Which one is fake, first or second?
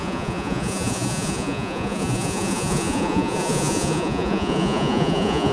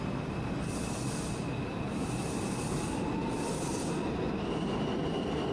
first